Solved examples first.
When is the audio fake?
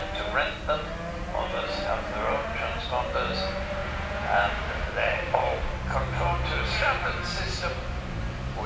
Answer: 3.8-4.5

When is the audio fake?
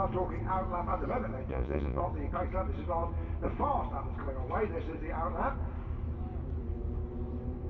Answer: 1.5-2.0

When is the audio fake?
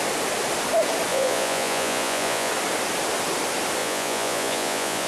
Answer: 1.1-2.5; 3.8-5.1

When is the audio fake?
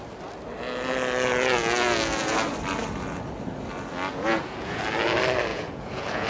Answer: 4.1-4.8; 5.5-6.3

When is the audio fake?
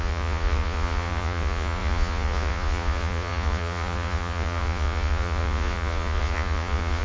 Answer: 0.0-7.0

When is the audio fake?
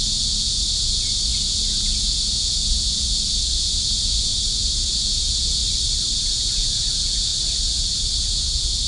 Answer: 0.0-5.6; 6.2-8.9